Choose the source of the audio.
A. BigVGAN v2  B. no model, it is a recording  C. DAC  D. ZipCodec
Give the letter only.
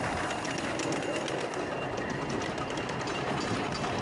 B